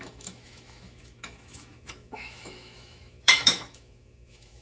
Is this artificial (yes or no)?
yes